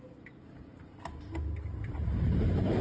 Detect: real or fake real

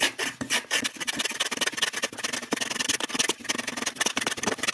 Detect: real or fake real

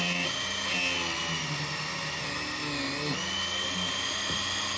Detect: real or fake real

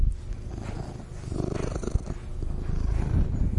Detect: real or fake real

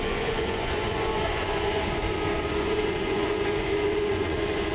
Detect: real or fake fake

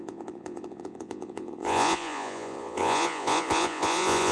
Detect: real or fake fake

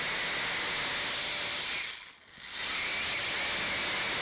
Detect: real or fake real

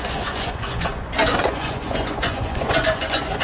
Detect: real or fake fake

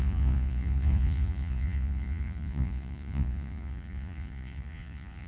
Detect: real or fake fake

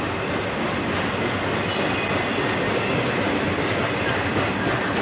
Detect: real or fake real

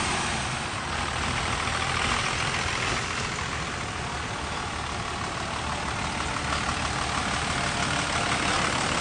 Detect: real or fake real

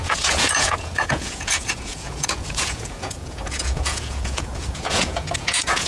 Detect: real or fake fake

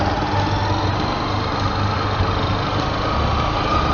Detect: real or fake real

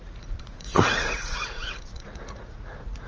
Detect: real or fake fake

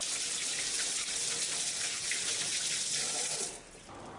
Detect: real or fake real